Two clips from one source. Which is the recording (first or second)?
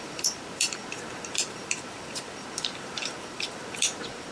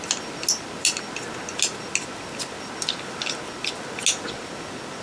second